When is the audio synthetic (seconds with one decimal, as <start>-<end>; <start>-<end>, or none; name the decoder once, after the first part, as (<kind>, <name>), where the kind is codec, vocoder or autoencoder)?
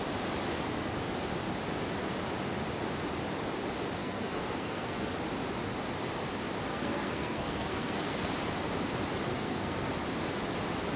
4.0-5.1 (codec, SNAC); 6.7-8.3; 9.3-9.9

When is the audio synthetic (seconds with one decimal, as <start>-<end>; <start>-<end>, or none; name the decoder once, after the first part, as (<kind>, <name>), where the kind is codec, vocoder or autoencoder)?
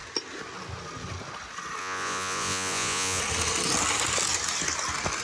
1.8-3.2 (vocoder, Vocos)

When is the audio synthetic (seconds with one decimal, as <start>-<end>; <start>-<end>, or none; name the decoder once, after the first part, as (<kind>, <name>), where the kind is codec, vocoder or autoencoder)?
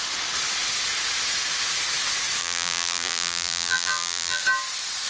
2.4-4.4 (vocoder, BigVGAN v2)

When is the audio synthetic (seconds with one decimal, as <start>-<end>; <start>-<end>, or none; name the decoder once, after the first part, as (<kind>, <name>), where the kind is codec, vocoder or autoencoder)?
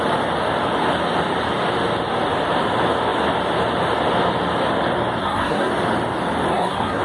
5.2-5.7 (codec, SNAC); 6.5-7.0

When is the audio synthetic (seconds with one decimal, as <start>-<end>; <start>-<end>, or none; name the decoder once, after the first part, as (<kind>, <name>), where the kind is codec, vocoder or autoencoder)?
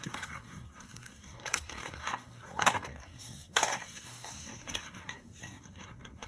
0.0-6.3 (codec, SNAC)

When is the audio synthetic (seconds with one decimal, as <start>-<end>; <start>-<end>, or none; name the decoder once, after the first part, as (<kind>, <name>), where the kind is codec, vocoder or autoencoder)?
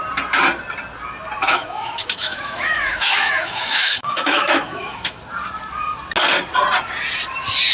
1.4-5.2 (autoencoder, DAC-VAE)